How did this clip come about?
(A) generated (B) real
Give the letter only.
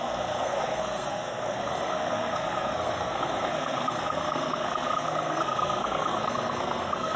A